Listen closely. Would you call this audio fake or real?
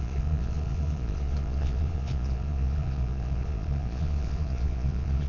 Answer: fake